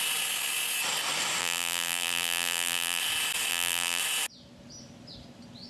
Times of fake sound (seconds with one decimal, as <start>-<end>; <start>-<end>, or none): 1.4-3.0; 3.5-4.0

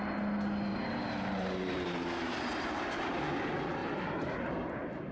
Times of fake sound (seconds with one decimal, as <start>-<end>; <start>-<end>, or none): 0.7-3.2; 3.8-5.1

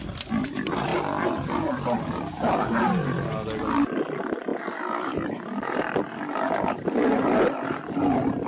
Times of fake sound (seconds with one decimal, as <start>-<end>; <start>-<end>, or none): none

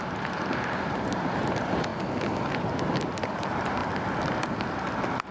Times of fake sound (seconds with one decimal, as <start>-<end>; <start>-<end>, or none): 0.0-1.9; 2.4-3.8

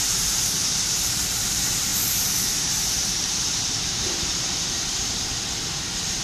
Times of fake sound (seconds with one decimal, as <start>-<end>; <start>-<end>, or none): 0.0-6.2

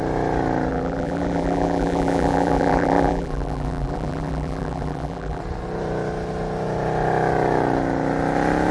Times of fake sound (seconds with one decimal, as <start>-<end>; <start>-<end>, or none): 0.7-5.4

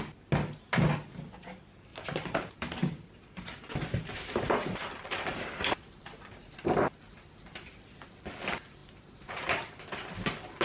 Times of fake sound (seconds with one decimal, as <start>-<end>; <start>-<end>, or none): 1.9-6.6; 8.8-9.8

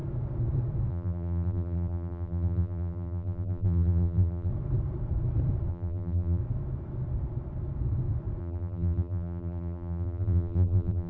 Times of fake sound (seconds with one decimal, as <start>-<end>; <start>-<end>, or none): 0.9-4.5; 5.7-6.4; 8.4-11.1